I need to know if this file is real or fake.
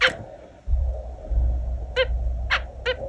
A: real